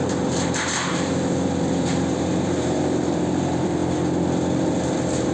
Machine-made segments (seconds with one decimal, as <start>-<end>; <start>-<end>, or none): 0.0-3.8; 4.6-5.3